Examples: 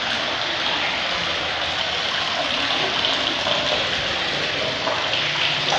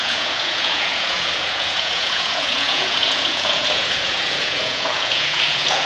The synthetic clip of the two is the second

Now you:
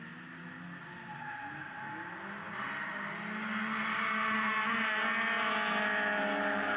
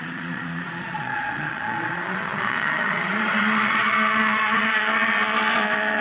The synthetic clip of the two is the second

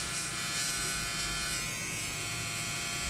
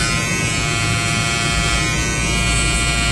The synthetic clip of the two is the first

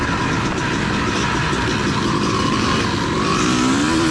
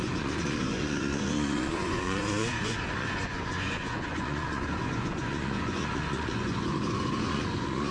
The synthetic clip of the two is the second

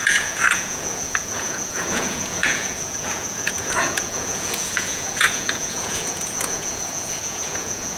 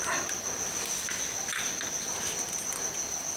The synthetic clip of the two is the first